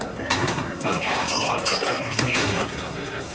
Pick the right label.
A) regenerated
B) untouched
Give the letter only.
A